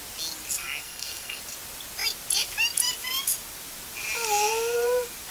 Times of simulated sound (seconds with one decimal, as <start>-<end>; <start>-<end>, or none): 0.6-1.4

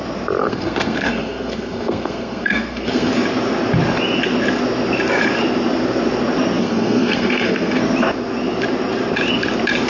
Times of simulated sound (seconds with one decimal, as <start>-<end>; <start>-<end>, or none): 0.4-3.1; 6.6-7.8

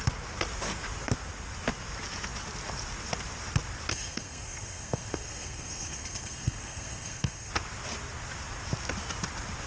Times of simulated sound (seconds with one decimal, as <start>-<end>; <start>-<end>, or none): 3.9-7.5

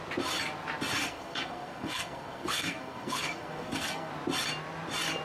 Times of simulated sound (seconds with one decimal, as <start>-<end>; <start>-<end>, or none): 1.0-4.1

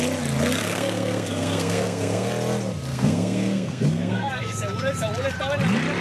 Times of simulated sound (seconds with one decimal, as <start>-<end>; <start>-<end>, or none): 0.6-2.3; 2.9-4.4

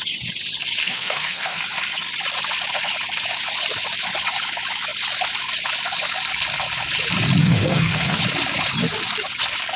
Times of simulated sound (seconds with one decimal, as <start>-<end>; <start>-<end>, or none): 0.8-1.6; 7.4-8.2

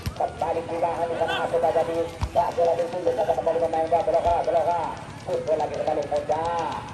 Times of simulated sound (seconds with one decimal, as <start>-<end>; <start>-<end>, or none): 2.3-3.6